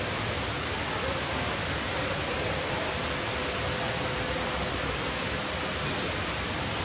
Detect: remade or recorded recorded